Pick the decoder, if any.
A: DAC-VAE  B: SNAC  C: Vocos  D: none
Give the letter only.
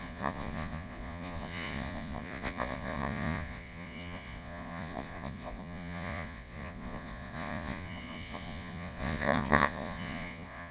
C